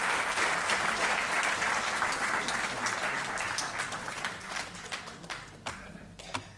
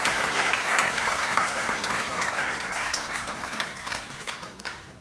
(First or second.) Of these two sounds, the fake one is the second